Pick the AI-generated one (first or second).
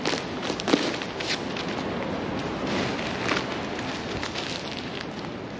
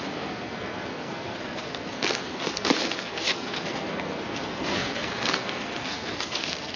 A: second